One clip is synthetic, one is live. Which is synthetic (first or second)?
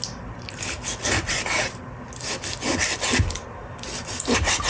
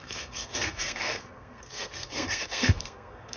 second